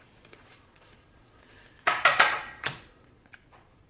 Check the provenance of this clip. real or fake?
fake